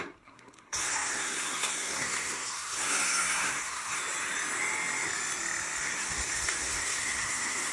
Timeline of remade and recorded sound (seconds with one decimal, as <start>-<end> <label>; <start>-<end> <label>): 0.0-4.0 remade; 4.0-5.8 recorded; 5.8-7.7 remade